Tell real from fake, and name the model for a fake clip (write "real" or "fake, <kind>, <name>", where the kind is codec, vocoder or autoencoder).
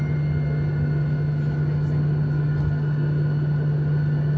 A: real